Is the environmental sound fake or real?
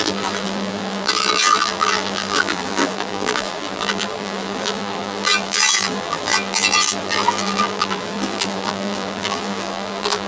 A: fake